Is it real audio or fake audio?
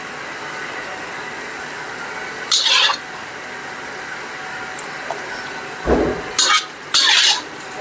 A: real